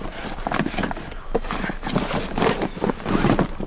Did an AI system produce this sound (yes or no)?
no